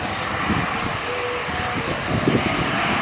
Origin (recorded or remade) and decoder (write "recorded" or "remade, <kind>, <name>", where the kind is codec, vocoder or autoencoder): recorded